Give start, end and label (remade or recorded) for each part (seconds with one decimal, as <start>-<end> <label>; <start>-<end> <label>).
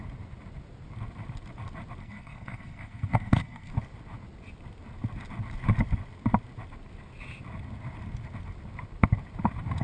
0.0-2.0 recorded; 2.0-3.7 remade; 3.7-9.8 recorded